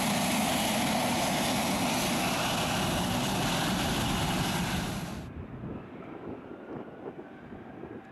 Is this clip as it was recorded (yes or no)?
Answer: yes